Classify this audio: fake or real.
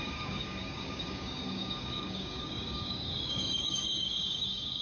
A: fake